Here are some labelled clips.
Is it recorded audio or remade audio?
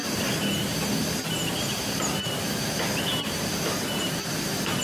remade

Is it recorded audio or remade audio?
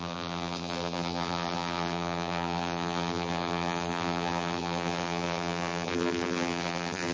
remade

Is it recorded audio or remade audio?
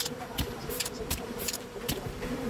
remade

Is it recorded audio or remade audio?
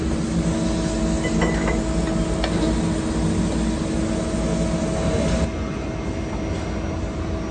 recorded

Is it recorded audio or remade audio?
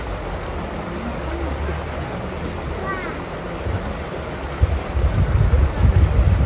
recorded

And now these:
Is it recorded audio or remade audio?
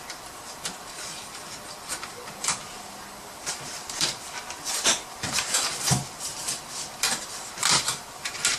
remade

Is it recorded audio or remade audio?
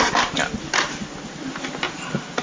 recorded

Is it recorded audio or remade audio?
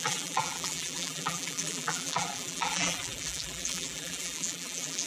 remade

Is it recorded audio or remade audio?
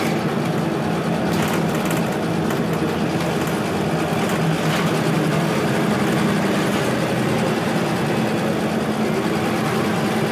recorded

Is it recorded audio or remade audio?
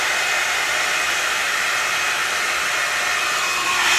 recorded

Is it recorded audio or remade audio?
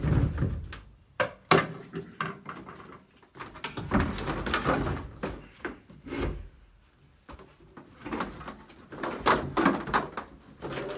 recorded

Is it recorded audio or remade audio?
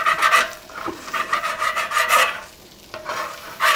remade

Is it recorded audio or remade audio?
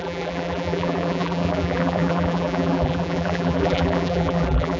remade